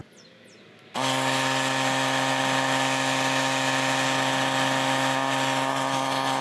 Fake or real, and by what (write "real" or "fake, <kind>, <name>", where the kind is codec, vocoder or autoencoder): real